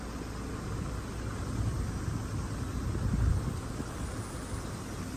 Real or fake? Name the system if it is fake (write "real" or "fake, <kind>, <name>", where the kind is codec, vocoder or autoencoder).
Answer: real